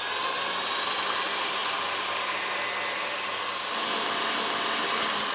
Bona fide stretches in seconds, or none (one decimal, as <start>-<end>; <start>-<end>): 0.0-5.3